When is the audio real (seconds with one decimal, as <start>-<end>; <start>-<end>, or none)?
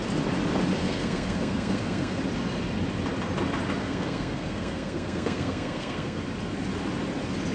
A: 0.0-0.8; 2.2-3.8; 6.2-7.5